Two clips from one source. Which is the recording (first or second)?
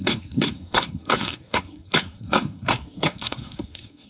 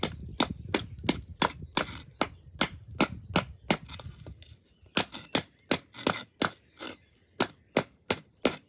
second